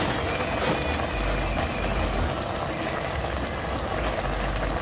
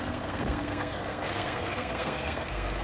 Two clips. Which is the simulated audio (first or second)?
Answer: second